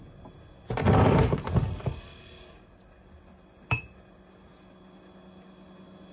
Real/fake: real